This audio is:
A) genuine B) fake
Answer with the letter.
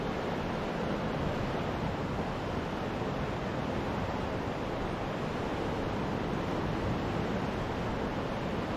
A